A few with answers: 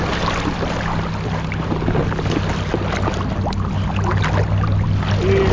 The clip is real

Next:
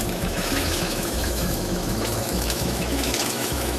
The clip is fake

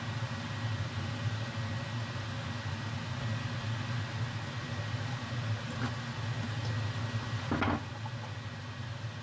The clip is real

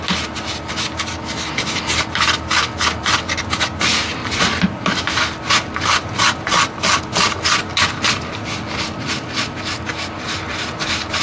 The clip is real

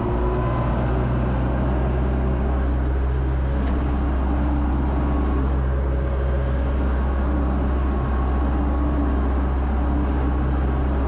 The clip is real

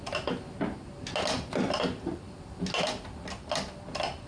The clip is real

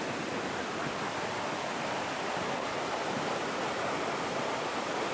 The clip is real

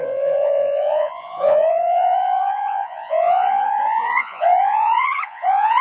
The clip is fake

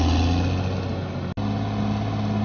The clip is real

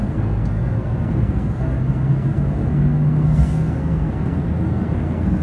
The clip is fake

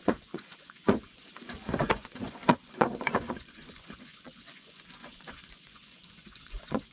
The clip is fake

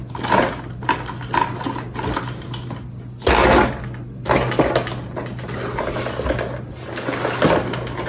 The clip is real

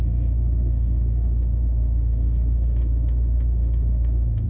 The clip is fake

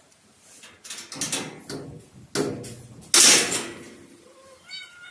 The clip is real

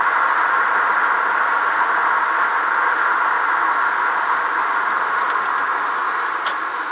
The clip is real